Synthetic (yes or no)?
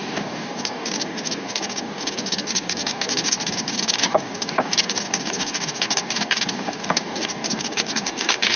yes